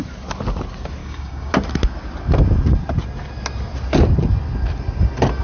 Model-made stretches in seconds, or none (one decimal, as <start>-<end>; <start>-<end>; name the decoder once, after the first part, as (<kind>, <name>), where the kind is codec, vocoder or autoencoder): 1.0-1.5 (codec, DAC)